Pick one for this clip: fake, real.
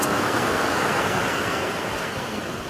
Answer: fake